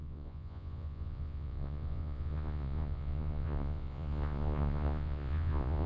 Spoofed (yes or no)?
yes